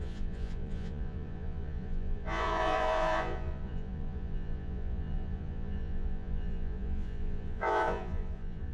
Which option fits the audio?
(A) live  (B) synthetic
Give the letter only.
B